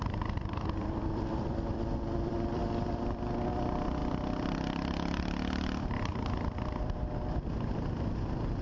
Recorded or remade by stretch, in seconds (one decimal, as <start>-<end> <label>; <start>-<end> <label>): 0.0-8.6 remade